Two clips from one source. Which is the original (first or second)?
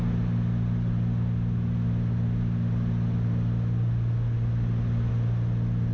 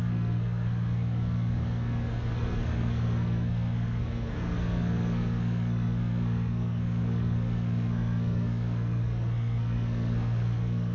first